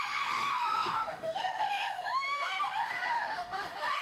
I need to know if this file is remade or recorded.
remade